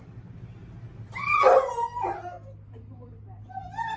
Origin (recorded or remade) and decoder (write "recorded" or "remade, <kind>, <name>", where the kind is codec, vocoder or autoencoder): recorded